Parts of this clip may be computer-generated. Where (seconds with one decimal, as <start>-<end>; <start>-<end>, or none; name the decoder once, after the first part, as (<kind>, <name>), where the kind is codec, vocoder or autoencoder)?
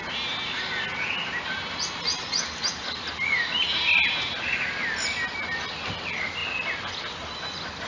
none